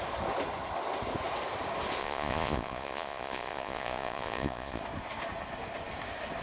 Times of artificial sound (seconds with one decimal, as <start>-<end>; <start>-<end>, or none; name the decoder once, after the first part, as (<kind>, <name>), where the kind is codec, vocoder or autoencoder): 2.0-4.8 (vocoder, Vocos)